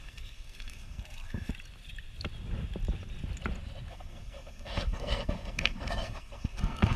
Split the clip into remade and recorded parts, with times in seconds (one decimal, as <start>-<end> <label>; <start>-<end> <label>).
0.0-1.5 remade; 1.5-3.9 recorded; 3.9-7.0 remade